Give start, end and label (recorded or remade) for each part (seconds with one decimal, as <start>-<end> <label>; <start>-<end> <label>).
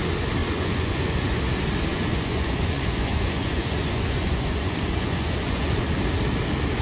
0.0-0.4 recorded; 0.4-1.4 remade; 1.4-1.9 recorded; 1.9-5.8 remade; 5.8-6.8 recorded